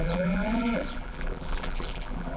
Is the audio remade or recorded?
remade